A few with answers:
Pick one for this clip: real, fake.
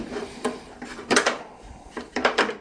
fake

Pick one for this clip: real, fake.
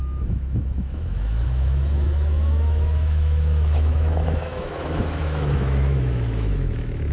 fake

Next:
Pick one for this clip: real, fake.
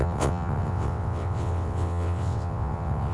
fake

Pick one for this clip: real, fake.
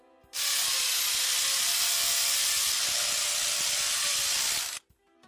real